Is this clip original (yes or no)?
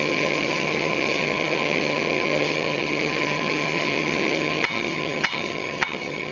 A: no